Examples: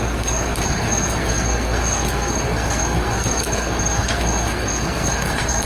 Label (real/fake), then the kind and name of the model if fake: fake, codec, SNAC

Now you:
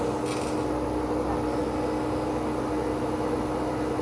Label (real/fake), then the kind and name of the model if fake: real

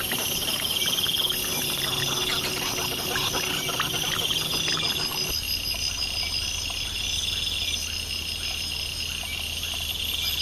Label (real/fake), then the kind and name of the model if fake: real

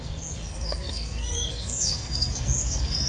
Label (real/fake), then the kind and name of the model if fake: fake, codec, SNAC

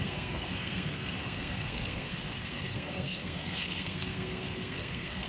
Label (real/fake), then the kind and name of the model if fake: fake, codec, SNAC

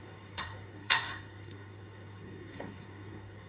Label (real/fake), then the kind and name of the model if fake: fake, codec, SNAC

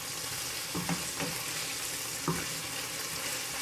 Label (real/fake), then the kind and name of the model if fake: real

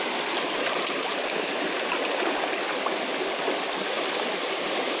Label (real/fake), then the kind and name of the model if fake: real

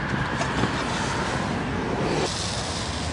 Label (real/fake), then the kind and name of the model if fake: real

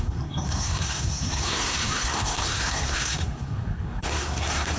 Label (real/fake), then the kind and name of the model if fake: fake, codec, SNAC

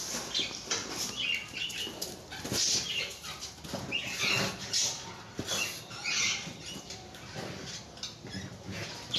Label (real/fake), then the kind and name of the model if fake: real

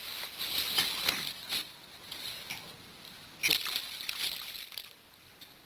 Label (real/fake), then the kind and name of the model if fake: real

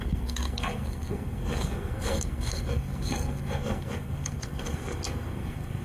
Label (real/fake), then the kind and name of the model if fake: fake, codec, SNAC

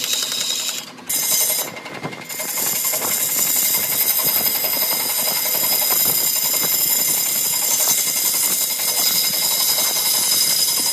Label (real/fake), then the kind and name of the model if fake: real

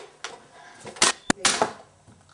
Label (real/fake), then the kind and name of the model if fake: real